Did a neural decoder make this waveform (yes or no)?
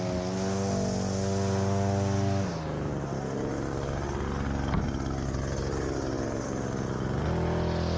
no